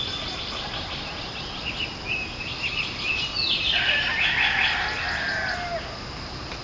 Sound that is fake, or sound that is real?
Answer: real